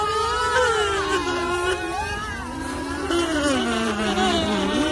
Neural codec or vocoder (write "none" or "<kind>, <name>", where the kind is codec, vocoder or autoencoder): vocoder, BigVGAN v2